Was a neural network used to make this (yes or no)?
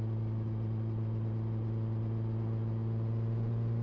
no